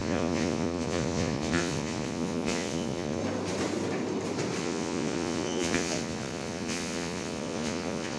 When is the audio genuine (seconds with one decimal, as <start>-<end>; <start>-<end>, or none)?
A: 3.2-4.6